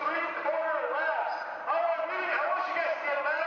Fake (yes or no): no